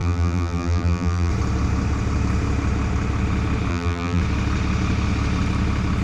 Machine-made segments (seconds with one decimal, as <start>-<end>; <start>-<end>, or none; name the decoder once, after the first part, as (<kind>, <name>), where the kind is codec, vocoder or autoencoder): 0.0-1.3 (vocoder, BigVGAN v2); 3.7-4.2